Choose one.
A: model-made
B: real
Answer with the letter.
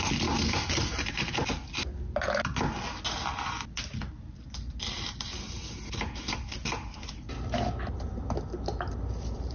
B